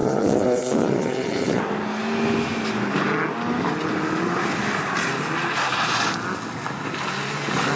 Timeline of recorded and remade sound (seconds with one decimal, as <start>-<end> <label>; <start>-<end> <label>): 0.0-1.6 remade; 1.6-7.8 recorded